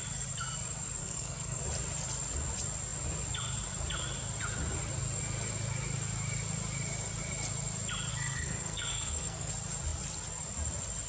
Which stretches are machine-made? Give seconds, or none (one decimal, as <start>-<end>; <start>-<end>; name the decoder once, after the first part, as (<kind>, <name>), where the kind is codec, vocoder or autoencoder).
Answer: 1.0-1.6 (codec, SNAC); 8.1-9.5